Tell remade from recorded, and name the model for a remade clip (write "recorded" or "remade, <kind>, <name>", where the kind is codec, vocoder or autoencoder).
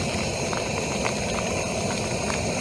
recorded